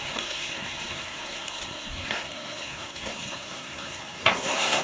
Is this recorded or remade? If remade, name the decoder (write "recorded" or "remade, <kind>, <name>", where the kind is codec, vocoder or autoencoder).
remade, codec, SNAC